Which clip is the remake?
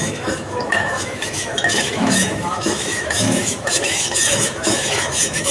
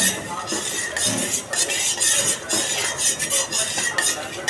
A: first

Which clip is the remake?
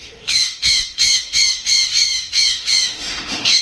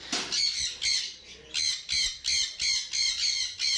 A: first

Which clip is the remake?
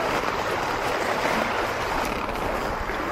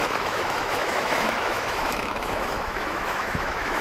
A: second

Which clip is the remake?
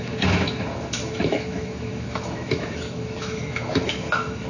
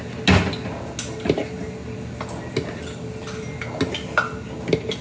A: first